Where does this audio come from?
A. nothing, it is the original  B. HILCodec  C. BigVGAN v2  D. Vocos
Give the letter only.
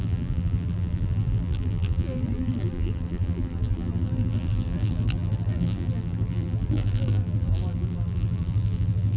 C